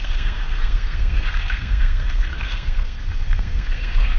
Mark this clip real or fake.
fake